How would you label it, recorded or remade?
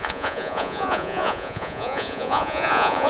remade